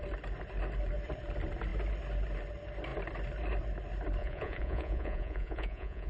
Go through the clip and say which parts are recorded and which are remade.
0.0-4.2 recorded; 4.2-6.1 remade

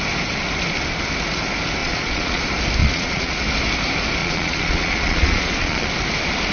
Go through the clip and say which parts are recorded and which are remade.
0.0-1.8 recorded; 1.8-2.4 remade; 2.4-2.8 recorded; 2.8-3.3 remade; 3.3-4.2 recorded; 4.2-5.9 remade; 5.9-6.5 recorded

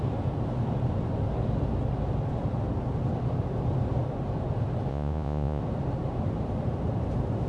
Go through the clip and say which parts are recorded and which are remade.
0.0-4.9 recorded; 4.9-5.6 remade; 5.6-7.5 recorded